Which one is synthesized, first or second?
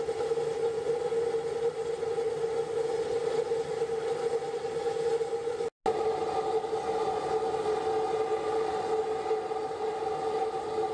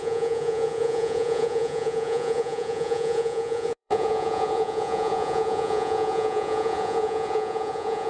second